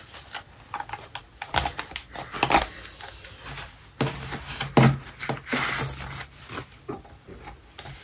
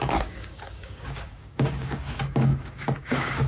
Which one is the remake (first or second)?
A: second